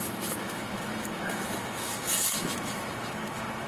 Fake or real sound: fake